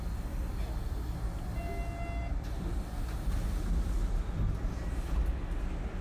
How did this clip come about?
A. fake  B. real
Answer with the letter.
B